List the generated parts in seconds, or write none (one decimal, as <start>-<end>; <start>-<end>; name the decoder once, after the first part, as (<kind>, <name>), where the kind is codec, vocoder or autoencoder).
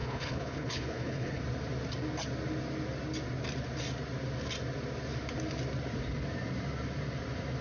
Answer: 0.0-1.4 (codec, HILCodec)